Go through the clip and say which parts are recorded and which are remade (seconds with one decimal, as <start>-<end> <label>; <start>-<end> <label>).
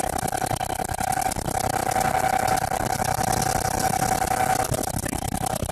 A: 0.0-5.7 recorded